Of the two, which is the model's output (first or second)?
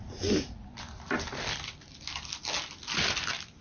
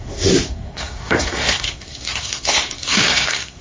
second